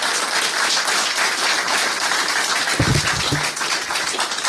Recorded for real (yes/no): yes